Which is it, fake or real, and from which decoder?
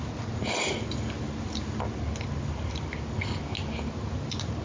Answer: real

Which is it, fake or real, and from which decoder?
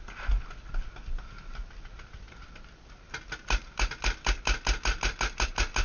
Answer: real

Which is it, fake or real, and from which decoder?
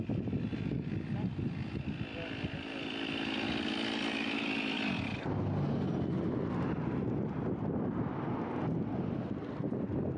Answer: real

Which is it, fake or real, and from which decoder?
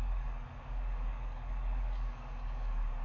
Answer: fake, codec, DAC